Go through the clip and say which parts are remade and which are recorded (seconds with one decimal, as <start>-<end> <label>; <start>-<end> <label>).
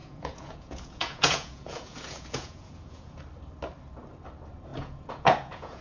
0.0-3.2 remade; 3.2-4.7 recorded; 4.7-5.8 remade